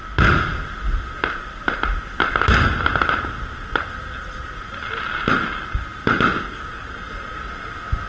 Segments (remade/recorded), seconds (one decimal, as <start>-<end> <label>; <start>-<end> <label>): 0.0-8.1 recorded